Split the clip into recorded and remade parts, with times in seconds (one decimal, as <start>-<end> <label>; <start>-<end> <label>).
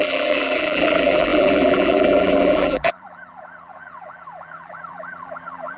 0.0-5.8 remade